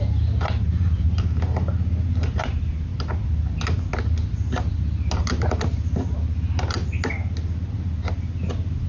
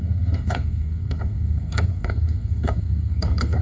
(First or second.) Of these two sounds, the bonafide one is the first